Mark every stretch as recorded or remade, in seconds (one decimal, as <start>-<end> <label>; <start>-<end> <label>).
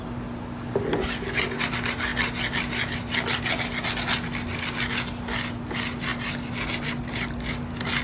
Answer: 0.0-8.0 recorded